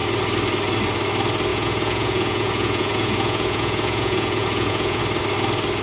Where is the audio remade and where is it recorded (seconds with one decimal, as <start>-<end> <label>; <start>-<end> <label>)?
0.0-1.5 recorded; 1.5-5.0 remade; 5.0-5.8 recorded